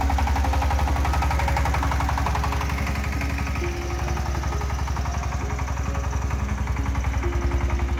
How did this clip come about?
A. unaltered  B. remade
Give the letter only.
A